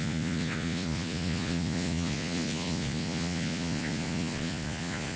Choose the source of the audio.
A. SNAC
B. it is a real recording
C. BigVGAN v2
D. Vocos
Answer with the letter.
D